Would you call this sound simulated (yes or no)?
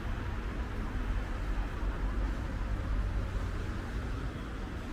no